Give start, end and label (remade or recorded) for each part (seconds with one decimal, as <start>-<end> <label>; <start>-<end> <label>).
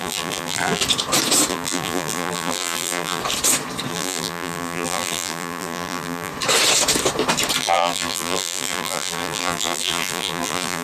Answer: 0.0-0.8 remade; 0.8-1.5 recorded; 1.5-3.2 remade; 3.2-3.9 recorded; 3.9-6.3 remade; 6.3-7.6 recorded; 7.6-10.8 remade